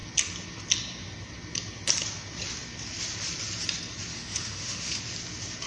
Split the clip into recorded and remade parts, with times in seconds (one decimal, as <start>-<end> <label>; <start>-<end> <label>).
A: 0.0-4.1 recorded; 4.1-5.0 remade; 5.0-5.7 recorded